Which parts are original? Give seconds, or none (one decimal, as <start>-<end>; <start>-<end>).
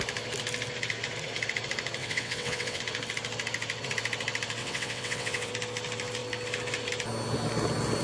0.0-2.0; 2.8-4.6; 5.5-8.0